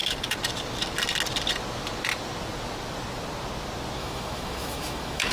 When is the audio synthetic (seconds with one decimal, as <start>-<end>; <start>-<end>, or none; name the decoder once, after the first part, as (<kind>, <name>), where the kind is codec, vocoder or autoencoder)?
4.0-5.3 (autoencoder, DAC-VAE)